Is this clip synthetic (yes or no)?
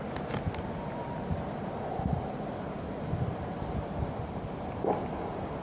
no